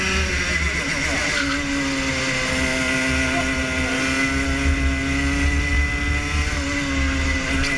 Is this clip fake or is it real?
real